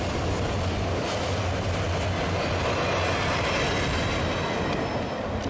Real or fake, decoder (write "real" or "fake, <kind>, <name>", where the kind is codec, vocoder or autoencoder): real